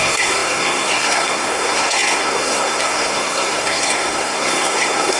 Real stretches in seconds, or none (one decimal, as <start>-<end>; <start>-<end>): none